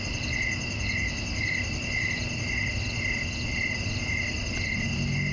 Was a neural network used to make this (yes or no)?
no